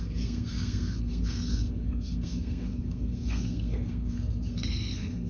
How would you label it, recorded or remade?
remade